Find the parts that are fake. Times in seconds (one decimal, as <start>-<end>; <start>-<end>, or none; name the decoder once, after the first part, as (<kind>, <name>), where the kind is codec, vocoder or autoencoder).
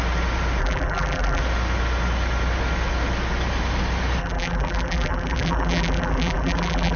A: 0.6-1.4 (vocoder, BigVGAN v2); 4.2-7.0